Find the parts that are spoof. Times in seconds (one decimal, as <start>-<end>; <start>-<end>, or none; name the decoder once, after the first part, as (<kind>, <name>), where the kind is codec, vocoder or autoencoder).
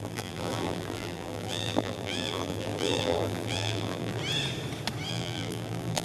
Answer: 0.0-4.2 (vocoder, BigVGAN v2); 5.1-6.0